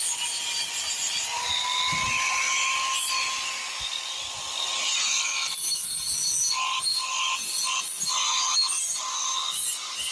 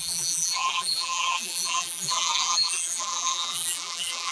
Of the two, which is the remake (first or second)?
second